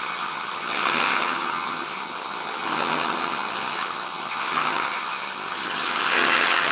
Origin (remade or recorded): remade